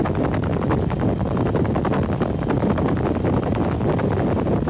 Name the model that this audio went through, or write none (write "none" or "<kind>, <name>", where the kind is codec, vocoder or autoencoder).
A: none